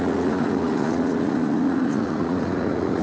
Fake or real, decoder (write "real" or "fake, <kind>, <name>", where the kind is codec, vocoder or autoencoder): fake, vocoder, Vocos